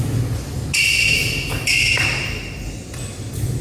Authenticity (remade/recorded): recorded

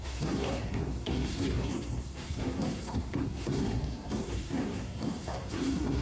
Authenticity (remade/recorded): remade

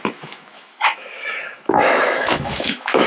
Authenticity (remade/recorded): remade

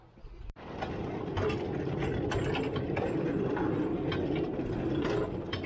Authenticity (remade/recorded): recorded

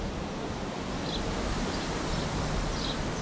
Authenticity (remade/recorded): recorded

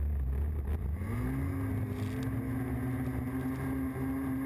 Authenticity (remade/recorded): recorded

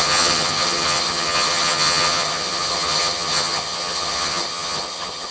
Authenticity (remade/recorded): remade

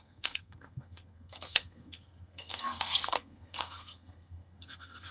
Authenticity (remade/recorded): remade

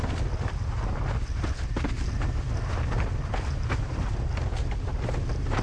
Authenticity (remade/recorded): recorded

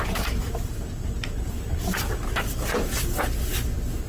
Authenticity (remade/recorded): remade